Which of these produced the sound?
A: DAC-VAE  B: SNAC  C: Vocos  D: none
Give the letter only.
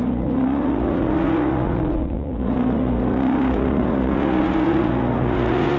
C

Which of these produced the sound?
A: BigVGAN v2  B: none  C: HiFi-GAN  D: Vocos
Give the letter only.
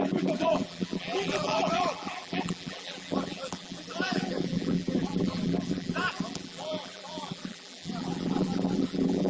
A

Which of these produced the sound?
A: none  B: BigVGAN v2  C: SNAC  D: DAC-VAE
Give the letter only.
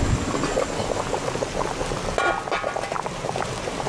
A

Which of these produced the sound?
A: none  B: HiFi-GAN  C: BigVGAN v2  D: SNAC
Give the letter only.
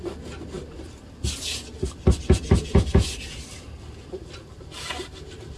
A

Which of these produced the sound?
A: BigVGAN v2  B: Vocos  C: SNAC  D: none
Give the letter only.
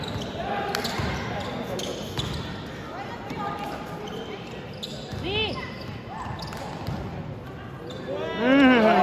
D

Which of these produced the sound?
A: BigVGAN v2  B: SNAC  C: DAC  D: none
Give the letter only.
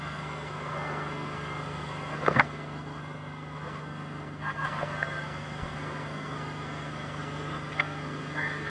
B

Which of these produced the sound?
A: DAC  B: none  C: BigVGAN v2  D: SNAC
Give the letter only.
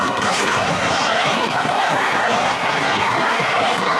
D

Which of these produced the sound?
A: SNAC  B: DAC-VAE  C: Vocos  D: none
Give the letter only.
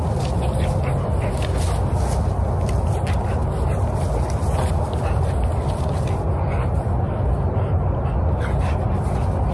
D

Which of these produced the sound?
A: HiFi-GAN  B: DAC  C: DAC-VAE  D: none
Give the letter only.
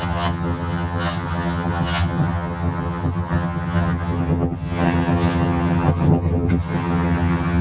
A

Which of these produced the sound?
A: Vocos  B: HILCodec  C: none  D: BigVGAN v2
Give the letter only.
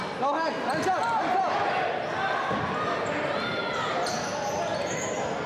C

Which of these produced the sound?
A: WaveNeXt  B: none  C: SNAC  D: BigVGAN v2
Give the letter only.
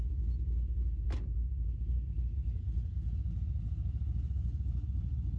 B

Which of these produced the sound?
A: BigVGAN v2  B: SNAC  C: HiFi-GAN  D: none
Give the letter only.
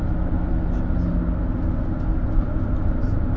D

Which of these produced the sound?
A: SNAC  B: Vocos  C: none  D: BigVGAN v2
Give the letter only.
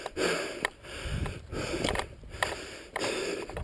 D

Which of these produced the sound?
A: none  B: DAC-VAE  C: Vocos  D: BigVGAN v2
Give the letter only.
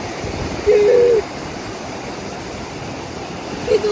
D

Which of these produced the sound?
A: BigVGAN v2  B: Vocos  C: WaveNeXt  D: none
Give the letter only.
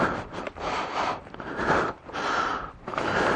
A